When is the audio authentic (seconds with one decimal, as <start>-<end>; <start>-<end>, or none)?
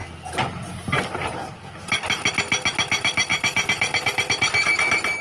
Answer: 0.0-5.2